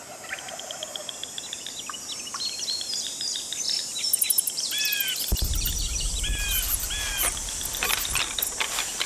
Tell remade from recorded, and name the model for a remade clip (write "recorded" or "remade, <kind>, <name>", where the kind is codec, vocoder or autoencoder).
remade, vocoder, BigVGAN v2